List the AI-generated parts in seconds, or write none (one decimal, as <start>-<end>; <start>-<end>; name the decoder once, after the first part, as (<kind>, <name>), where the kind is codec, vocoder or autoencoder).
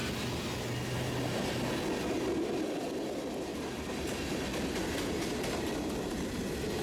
none